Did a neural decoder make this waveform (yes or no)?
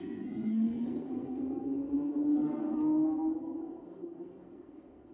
yes